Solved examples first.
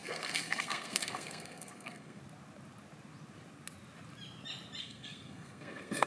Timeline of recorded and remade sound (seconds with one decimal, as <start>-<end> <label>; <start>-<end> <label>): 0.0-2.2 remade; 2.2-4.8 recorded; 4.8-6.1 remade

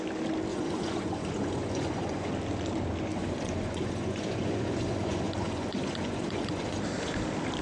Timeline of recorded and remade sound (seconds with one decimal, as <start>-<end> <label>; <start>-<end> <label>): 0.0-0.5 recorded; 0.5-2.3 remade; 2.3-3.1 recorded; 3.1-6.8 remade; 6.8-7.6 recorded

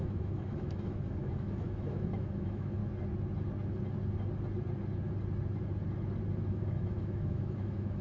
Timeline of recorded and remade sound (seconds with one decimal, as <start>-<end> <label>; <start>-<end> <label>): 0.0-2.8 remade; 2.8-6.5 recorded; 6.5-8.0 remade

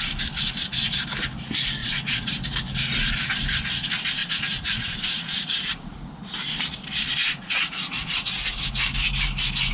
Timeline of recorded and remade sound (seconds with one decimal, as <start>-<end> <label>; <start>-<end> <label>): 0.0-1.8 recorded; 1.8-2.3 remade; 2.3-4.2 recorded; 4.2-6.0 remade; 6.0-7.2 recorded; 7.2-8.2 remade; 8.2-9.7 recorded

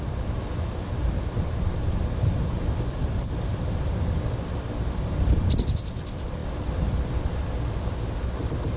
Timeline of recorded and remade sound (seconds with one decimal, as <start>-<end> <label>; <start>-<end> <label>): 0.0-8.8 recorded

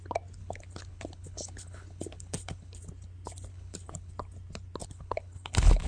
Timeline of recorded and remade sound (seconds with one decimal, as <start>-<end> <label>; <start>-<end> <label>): 0.0-0.4 recorded; 0.4-2.8 remade; 2.8-3.5 recorded; 3.5-4.1 remade; 4.1-4.8 recorded; 4.8-5.9 remade

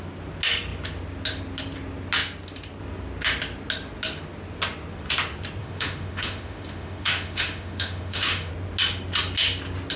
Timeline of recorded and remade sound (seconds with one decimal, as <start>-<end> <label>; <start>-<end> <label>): 0.0-5.6 recorded; 5.6-8.5 remade; 8.5-10.0 recorded